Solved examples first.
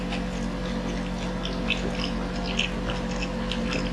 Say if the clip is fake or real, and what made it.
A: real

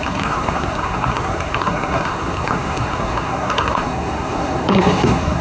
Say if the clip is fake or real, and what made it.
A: fake, codec, SNAC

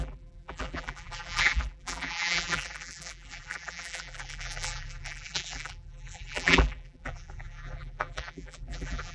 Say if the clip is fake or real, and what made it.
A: fake, vocoder, BigVGAN v2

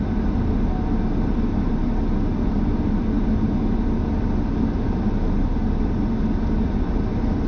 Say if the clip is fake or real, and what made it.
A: real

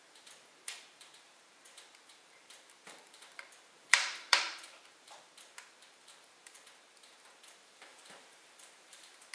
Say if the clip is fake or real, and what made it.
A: fake, vocoder, BigVGAN v2